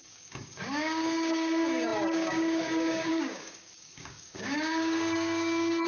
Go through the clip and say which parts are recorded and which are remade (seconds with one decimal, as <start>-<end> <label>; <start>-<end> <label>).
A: 0.0-5.9 remade

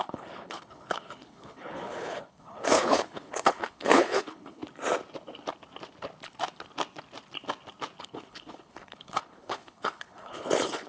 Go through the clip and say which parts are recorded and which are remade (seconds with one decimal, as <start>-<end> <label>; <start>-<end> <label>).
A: 0.0-4.6 remade; 4.6-8.0 recorded; 8.0-10.9 remade

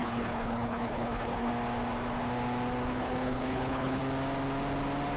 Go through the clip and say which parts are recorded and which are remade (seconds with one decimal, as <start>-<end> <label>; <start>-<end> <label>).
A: 0.0-1.5 remade; 1.5-2.9 recorded; 2.9-4.0 remade; 4.0-5.2 recorded

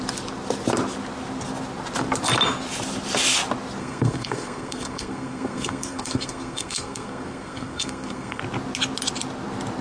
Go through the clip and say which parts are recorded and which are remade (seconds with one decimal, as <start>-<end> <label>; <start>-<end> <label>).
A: 0.0-3.8 recorded; 3.8-8.4 remade; 8.4-9.8 recorded

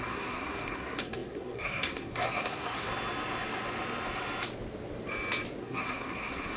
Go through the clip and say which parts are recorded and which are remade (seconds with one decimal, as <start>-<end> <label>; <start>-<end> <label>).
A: 0.0-2.9 remade; 2.9-5.6 recorded; 5.6-6.6 remade

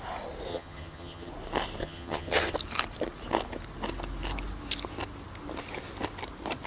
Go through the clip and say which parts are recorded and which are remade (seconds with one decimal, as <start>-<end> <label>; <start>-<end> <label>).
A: 0.0-0.5 recorded; 0.5-1.3 remade; 1.3-1.8 recorded; 1.8-2.5 remade; 2.5-6.7 recorded

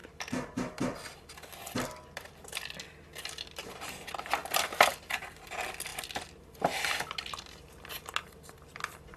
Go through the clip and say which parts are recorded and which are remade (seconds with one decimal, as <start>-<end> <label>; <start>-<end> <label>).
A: 0.0-2.5 remade; 2.5-9.2 recorded

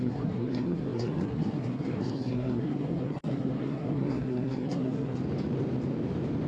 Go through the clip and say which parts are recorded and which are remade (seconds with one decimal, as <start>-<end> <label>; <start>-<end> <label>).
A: 0.0-5.2 remade; 5.2-6.5 recorded